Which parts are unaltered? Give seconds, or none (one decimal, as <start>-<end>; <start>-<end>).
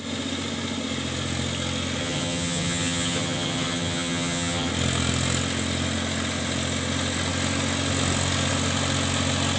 0.0-2.0; 4.7-9.6